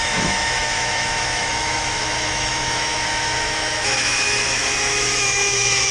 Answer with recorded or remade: remade